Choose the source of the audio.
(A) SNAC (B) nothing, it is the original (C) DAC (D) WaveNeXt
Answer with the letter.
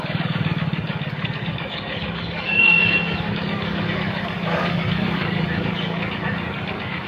C